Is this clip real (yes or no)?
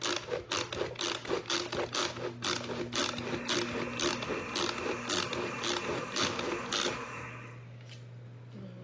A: yes